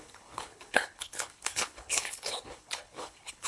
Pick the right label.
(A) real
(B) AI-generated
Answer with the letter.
B